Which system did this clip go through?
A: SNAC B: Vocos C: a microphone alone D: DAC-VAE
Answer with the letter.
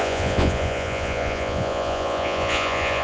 B